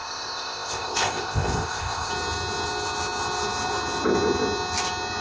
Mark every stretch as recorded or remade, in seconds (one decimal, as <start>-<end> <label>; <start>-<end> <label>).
0.0-2.1 remade; 2.1-5.2 recorded